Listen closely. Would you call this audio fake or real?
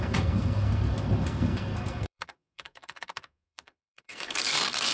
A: fake